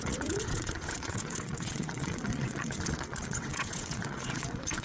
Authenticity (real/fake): fake